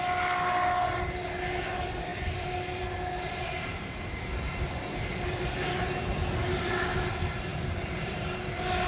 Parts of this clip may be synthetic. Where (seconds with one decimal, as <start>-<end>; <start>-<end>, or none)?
7.5-8.1